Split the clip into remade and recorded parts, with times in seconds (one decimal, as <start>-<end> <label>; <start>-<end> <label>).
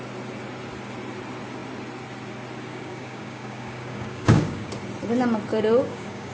0.0-2.7 recorded; 2.7-4.7 remade; 4.7-5.5 recorded; 5.5-6.3 remade